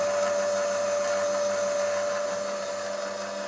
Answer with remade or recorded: recorded